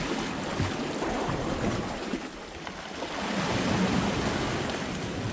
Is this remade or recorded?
recorded